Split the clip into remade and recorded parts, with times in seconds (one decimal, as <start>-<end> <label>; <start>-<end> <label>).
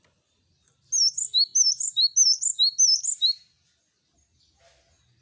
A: 0.0-5.2 recorded